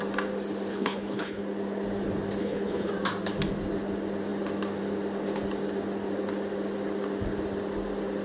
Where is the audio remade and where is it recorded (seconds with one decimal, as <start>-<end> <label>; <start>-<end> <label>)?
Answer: 0.0-0.7 recorded; 0.7-1.4 remade; 1.4-2.4 recorded; 2.4-2.9 remade; 2.9-8.2 recorded